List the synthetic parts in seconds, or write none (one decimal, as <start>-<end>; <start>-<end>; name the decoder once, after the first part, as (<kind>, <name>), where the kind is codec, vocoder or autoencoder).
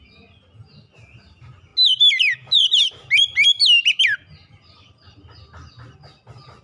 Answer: none